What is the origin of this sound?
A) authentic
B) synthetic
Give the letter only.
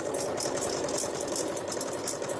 A